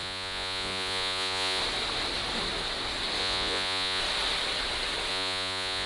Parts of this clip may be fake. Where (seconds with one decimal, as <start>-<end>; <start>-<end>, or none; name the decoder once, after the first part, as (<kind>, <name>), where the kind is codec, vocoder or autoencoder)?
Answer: 0.0-1.6 (vocoder, Vocos); 3.2-4.0; 5.1-5.9